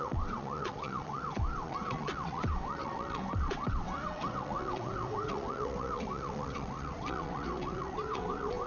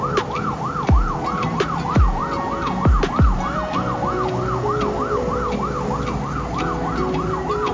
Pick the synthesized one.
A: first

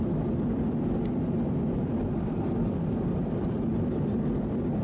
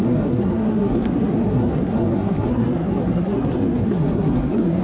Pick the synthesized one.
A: second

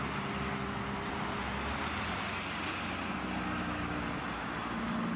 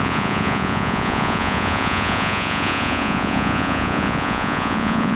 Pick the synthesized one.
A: second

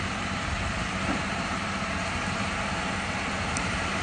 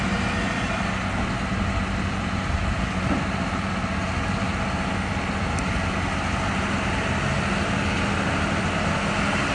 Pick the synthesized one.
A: first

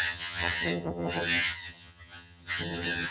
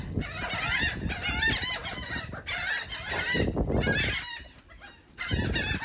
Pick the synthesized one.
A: first